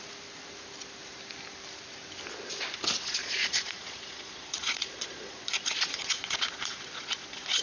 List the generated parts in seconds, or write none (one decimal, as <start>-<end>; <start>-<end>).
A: 3.2-7.6